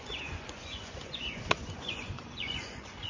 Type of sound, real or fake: fake